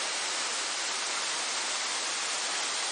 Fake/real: real